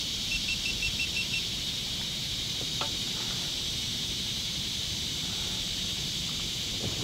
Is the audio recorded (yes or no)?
no